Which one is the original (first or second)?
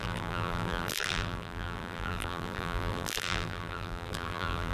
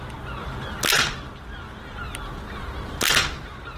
second